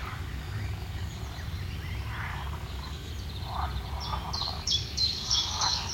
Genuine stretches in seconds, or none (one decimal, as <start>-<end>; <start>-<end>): 1.2-2.3; 3.1-4.4